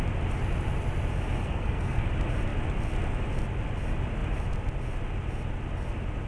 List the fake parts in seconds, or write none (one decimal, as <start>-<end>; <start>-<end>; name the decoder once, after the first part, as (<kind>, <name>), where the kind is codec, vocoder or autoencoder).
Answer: 1.4-2.1 (codec, SNAC)